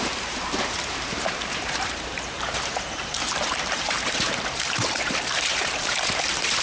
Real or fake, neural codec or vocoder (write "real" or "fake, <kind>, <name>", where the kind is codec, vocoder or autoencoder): fake, vocoder, BigVGAN v2